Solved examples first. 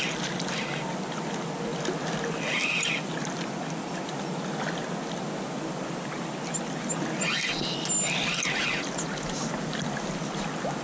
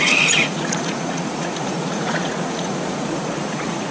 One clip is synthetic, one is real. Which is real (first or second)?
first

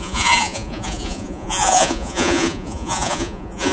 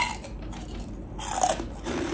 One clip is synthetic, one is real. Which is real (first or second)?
second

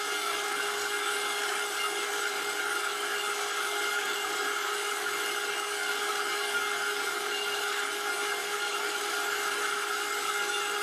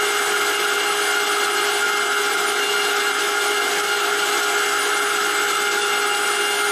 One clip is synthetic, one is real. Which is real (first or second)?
second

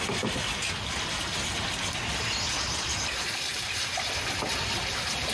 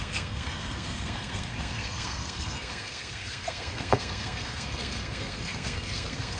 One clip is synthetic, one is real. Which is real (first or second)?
first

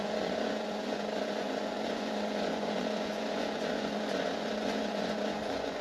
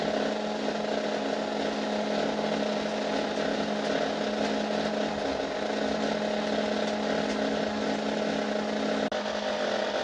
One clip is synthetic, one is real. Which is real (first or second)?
second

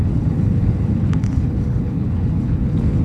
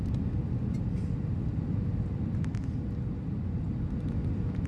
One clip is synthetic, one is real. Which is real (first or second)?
second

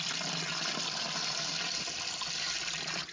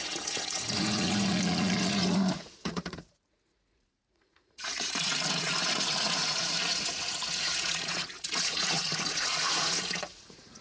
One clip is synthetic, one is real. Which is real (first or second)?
first